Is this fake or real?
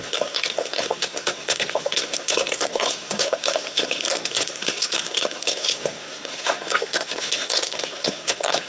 fake